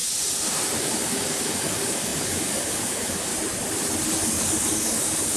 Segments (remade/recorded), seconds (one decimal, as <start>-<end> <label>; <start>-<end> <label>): 0.0-0.8 recorded; 0.8-3.3 remade; 3.3-4.4 recorded; 4.4-5.4 remade